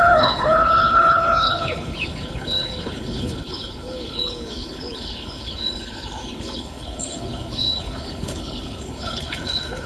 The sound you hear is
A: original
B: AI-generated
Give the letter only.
B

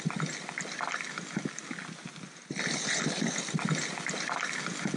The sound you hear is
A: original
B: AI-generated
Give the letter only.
A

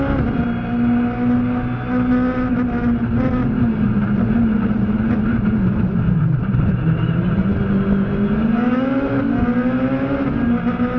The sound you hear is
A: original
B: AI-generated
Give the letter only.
A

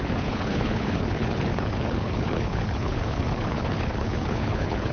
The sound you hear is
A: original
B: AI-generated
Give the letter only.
B